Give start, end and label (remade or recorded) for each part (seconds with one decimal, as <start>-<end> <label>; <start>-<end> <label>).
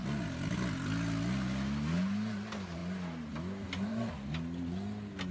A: 0.0-5.3 recorded